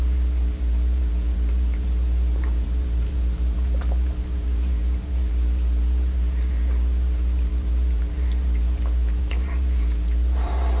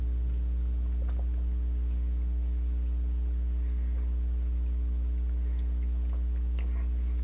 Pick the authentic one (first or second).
second